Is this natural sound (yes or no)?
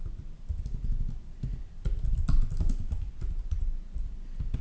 yes